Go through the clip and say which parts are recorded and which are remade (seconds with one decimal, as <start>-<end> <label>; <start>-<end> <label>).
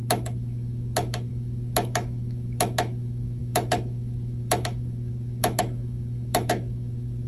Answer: 0.0-7.3 remade